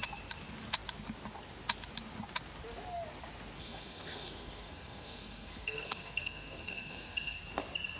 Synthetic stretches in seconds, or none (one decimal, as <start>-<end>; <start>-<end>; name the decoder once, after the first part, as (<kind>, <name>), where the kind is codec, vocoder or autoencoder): 3.6-7.4 (codec, SNAC)